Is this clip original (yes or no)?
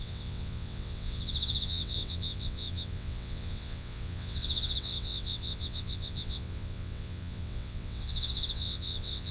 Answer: no